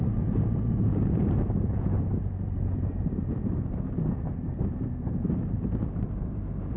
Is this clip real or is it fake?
fake